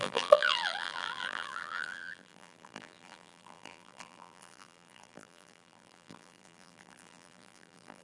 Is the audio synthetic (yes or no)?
yes